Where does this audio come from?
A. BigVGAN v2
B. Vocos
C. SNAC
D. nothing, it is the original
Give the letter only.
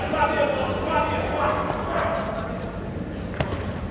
D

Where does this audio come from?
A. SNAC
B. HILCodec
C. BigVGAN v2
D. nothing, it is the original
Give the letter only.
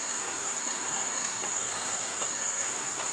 A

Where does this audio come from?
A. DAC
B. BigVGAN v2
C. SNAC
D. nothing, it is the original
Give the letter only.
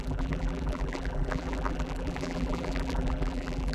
B